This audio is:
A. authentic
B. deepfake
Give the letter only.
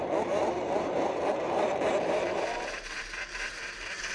B